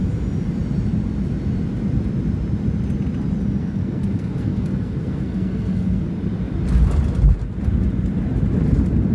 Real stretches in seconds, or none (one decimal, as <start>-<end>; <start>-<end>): 0.0-3.6; 6.1-9.1